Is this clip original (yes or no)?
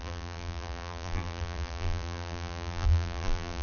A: no